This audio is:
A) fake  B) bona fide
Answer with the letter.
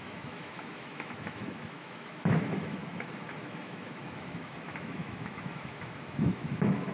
A